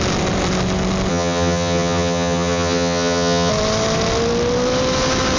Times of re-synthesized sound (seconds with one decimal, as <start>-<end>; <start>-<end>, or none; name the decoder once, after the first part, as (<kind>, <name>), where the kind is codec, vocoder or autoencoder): 1.1-3.5 (vocoder, HiFi-GAN)